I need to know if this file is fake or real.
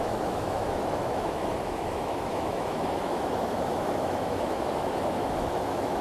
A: fake